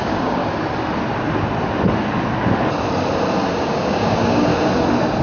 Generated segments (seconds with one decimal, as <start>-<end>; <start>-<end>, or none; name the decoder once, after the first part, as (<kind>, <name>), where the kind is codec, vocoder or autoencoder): 0.0-0.4 (codec, DAC); 3.5-4.5